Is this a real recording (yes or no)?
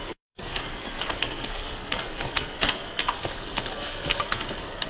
no